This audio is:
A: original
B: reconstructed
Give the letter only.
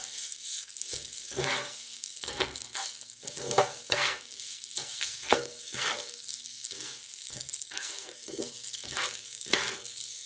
B